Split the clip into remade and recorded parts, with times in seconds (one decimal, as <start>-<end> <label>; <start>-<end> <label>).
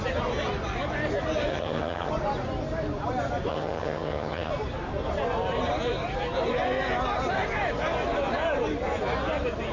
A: 0.0-1.5 recorded; 1.5-2.1 remade; 2.1-3.5 recorded; 3.5-4.5 remade; 4.5-9.7 recorded